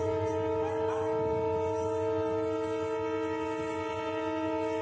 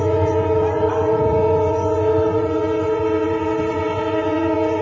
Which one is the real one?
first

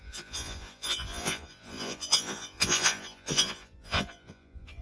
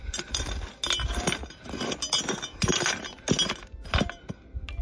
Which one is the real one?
second